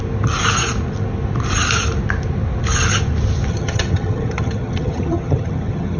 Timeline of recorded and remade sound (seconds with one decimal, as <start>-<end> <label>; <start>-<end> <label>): 0.0-3.5 recorded; 3.5-6.0 remade